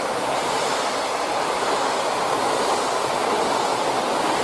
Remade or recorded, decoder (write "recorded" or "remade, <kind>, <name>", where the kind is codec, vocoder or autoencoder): remade, vocoder, BigVGAN v2